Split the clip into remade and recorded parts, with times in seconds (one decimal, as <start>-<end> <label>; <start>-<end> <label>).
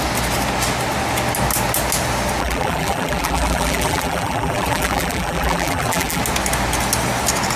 0.0-2.4 recorded; 2.4-6.2 remade; 6.2-7.6 recorded